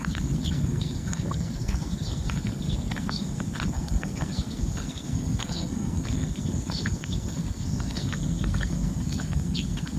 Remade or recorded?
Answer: remade